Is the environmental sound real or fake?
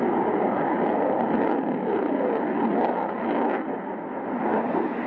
real